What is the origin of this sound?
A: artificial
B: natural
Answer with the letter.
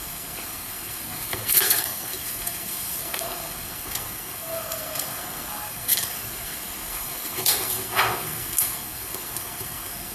A